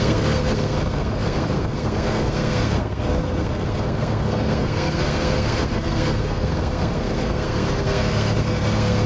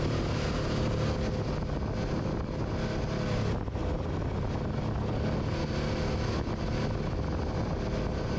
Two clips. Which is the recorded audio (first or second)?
second